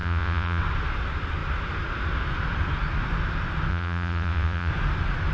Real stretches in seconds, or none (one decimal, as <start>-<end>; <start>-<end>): 0.6-3.7; 4.7-5.3